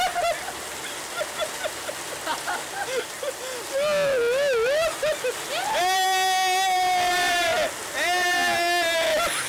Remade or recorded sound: recorded